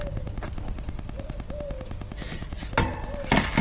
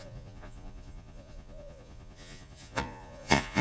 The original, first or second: first